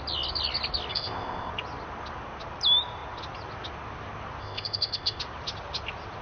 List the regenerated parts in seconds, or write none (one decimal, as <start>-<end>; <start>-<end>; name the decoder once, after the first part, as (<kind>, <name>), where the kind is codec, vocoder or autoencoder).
0.9-1.5 (codec, ZipCodec); 4.4-5.2